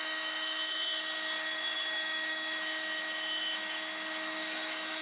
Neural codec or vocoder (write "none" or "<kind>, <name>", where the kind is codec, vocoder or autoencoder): autoencoder, DAC-VAE